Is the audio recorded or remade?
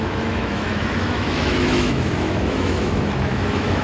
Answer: remade